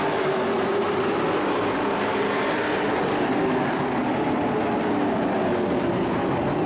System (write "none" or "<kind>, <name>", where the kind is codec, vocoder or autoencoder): none